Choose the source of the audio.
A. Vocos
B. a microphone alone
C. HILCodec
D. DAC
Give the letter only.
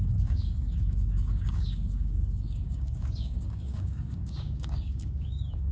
D